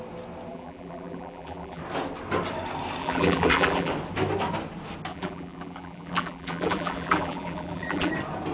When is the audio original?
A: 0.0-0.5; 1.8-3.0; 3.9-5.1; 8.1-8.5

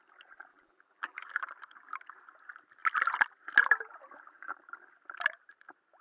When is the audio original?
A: 0.0-0.5; 1.4-6.0

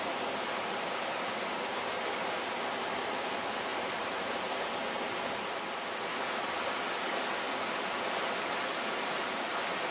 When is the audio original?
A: 0.0-3.7; 4.8-9.9

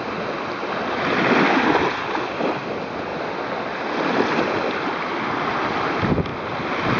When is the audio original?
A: 0.0-7.0

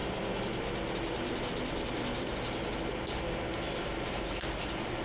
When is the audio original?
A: 0.0-5.0

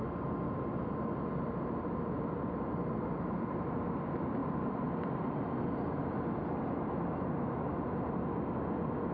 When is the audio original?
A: 0.0-9.1